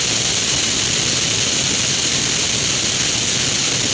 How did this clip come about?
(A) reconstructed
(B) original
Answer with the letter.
B